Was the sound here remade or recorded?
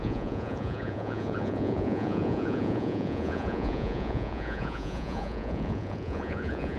remade